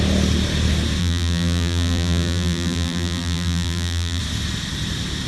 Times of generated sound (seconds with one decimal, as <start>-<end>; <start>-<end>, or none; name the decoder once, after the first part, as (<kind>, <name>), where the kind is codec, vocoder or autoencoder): 1.0-4.2 (vocoder, BigVGAN v2)